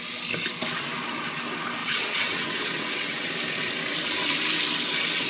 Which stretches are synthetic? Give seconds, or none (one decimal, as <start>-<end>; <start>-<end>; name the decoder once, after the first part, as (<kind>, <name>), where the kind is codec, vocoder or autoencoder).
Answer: 1.8-3.3 (vocoder, WaveNeXt)